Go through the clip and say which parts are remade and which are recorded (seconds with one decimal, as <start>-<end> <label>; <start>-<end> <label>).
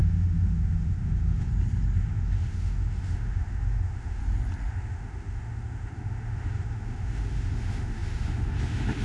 0.0-1.5 remade; 1.5-2.0 recorded; 2.0-4.2 remade; 4.2-4.7 recorded; 4.7-9.0 remade